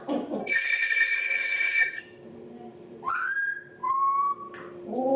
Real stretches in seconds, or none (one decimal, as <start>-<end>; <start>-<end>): 0.0-0.4; 2.0-5.2